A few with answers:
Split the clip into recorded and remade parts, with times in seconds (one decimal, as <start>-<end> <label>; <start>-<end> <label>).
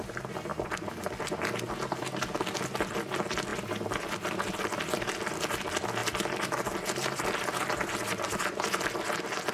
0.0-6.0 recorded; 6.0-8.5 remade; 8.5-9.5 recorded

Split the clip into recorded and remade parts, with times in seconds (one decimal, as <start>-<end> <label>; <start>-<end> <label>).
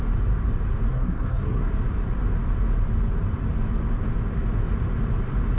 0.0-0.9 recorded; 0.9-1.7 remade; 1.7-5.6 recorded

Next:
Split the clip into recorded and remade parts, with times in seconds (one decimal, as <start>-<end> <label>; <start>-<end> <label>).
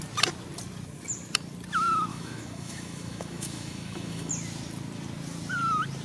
0.0-2.1 recorded; 2.1-4.3 remade; 4.3-6.0 recorded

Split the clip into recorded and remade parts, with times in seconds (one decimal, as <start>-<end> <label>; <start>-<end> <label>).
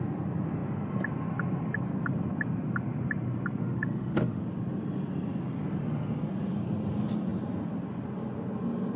0.0-3.6 recorded; 3.6-4.4 remade; 4.4-9.0 recorded